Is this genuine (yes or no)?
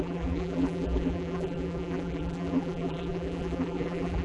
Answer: no